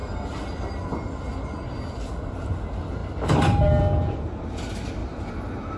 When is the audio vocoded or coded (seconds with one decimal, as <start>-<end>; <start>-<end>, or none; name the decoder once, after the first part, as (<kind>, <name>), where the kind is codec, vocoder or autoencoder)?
none